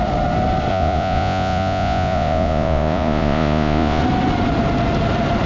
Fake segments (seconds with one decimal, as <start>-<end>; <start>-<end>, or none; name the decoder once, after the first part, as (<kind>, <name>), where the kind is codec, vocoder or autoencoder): 0.7-4.0 (vocoder, Vocos)

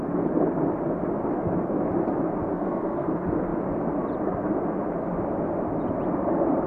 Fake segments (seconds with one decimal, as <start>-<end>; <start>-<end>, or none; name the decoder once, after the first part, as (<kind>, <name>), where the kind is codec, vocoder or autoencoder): 2.5-3.1 (codec, SNAC)

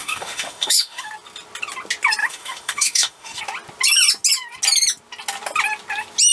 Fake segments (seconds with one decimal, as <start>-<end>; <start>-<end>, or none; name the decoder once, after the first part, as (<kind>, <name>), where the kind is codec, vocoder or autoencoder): 0.0-1.1 (autoencoder, DAC-VAE); 2.2-3.4